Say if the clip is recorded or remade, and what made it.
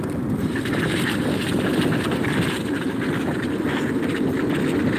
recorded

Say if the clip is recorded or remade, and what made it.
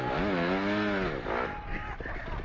recorded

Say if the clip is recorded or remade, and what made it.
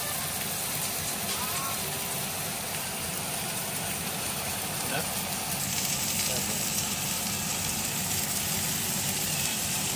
remade, vocoder, BigVGAN v2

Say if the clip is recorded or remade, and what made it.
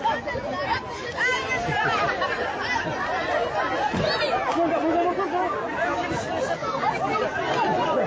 recorded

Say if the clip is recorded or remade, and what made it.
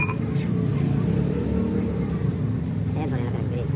recorded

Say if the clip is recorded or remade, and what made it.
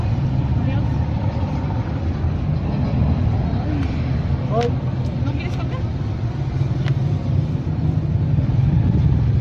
recorded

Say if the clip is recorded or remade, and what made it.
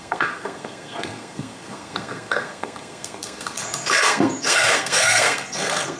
remade, codec, SNAC